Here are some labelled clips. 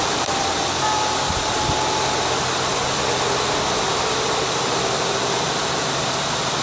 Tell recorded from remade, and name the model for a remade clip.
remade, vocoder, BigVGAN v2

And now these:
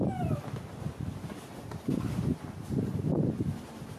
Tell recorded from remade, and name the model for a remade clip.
remade, vocoder, BigVGAN v2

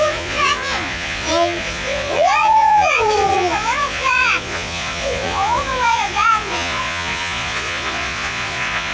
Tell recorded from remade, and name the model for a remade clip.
remade, vocoder, Vocos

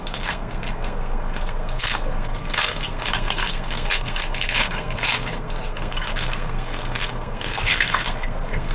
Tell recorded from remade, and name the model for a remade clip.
remade, codec, SNAC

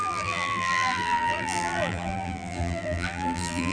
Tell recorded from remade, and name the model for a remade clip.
remade, vocoder, BigVGAN v2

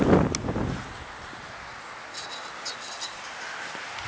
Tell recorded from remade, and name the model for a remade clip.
recorded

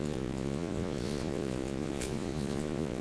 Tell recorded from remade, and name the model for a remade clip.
remade, vocoder, Vocos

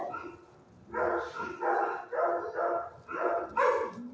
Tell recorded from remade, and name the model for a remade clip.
recorded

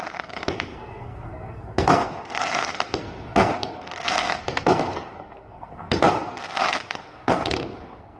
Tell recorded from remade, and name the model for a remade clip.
remade, codec, SNAC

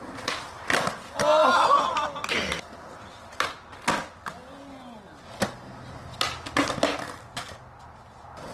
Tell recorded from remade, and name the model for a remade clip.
recorded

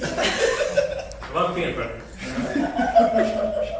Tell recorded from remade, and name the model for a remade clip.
recorded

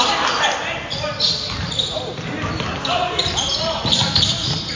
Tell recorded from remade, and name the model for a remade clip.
recorded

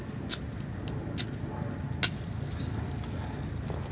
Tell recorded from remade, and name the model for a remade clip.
recorded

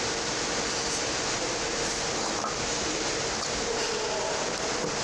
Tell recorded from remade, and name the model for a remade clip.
recorded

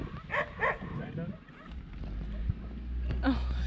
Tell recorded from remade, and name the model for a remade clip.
recorded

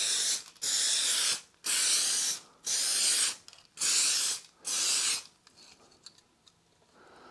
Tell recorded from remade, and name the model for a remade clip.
recorded